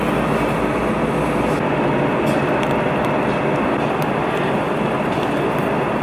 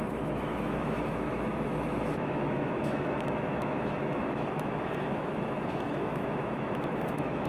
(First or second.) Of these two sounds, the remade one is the second